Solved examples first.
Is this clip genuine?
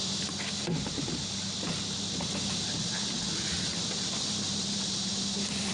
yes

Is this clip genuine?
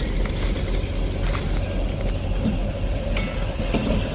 yes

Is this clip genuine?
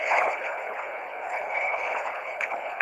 no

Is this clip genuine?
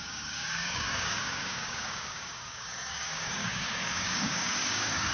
no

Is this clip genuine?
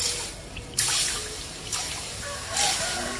yes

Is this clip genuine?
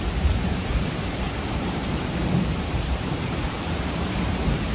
no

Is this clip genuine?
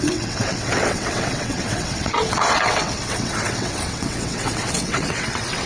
no